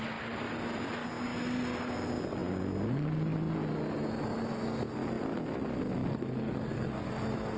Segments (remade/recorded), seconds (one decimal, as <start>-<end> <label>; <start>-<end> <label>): 0.0-6.1 recorded; 6.1-7.1 remade; 7.1-7.6 recorded